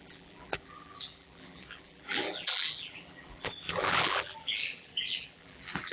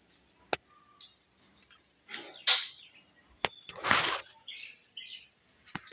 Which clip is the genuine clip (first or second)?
second